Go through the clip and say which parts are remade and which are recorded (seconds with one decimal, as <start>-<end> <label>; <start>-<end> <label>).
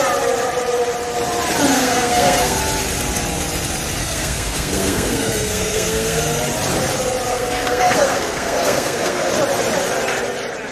0.0-1.7 recorded; 1.7-2.6 remade; 2.6-4.0 recorded; 4.0-6.2 remade; 6.2-7.3 recorded; 7.3-9.3 remade; 9.3-10.7 recorded